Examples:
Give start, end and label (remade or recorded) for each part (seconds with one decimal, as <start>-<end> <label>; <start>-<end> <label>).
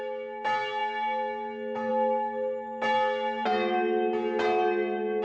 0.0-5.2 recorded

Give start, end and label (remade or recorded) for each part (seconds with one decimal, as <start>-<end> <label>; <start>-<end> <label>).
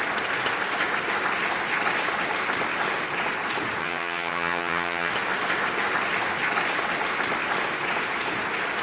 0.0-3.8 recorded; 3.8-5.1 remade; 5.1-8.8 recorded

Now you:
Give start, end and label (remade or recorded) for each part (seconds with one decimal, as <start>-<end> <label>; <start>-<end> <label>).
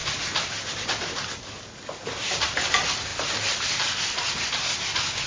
0.0-5.3 recorded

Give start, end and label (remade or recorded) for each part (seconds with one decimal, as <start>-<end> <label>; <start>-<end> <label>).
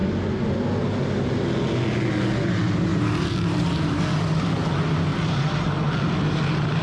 0.0-2.9 recorded; 2.9-4.0 remade; 4.0-5.1 recorded; 5.1-5.9 remade; 5.9-6.8 recorded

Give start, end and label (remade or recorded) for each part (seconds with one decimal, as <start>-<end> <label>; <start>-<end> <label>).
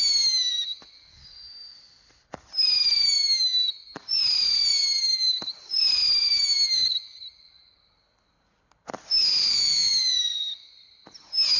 0.0-11.6 recorded